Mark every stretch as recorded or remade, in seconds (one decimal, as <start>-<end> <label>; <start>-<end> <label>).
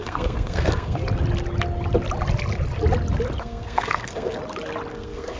0.0-1.0 remade; 1.0-3.4 recorded; 3.4-4.4 remade; 4.4-4.9 recorded; 4.9-5.4 remade